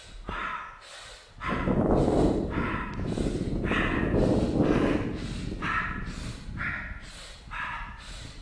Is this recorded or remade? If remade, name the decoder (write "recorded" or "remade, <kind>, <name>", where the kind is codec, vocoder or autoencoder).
recorded